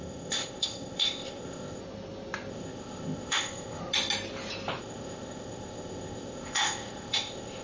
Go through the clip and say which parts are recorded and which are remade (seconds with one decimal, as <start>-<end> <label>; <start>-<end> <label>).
0.0-1.8 remade; 1.8-2.5 recorded; 2.5-3.8 remade; 3.8-4.8 recorded; 4.8-7.6 remade